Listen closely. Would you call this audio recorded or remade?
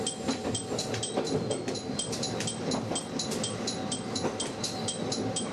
recorded